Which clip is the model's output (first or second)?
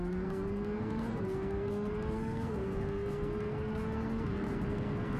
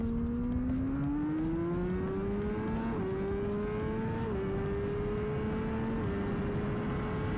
first